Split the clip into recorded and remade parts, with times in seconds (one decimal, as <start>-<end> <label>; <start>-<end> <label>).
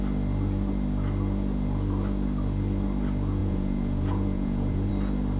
0.0-3.4 recorded; 3.4-4.9 remade; 4.9-5.4 recorded